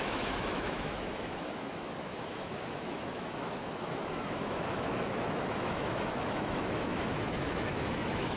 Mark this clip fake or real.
fake